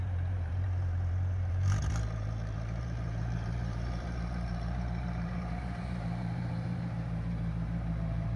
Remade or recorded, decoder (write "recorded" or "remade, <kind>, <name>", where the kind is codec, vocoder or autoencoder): remade, vocoder, BigVGAN v2